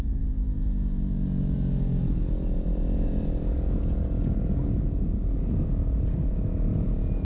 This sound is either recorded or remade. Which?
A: recorded